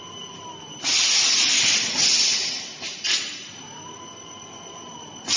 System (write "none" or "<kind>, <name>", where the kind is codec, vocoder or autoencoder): none